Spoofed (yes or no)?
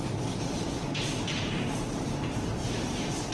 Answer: yes